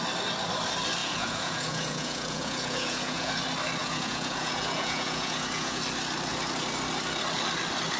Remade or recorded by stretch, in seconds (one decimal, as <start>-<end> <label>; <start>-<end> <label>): 0.0-1.0 recorded; 1.0-3.4 remade; 3.4-3.8 recorded; 3.8-5.8 remade; 5.8-8.0 recorded